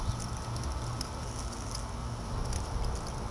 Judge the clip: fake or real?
real